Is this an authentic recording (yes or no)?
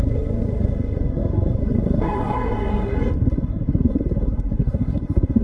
no